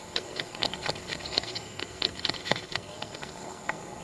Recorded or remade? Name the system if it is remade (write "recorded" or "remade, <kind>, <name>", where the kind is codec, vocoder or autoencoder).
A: remade, codec, SNAC